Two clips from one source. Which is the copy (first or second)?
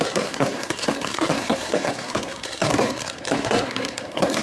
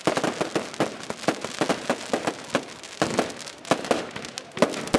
first